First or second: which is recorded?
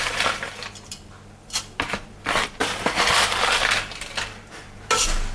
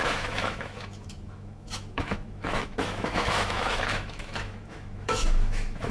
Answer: first